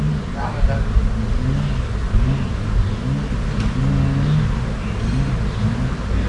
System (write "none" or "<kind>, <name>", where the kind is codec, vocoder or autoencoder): none